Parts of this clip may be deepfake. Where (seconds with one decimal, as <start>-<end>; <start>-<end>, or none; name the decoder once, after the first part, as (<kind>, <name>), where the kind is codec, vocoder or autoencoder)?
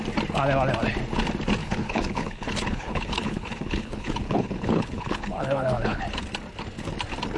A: 1.6-6.0 (codec, HILCodec)